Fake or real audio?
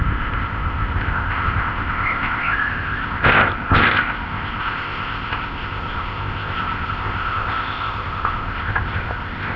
fake